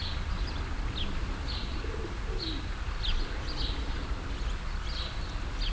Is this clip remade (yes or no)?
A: no